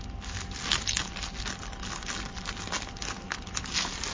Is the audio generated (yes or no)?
no